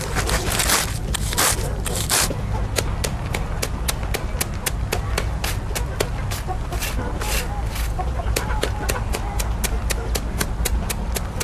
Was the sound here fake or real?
real